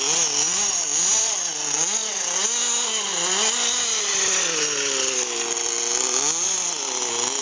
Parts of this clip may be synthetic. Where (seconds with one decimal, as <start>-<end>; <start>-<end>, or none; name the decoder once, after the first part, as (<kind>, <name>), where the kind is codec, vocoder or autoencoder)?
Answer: none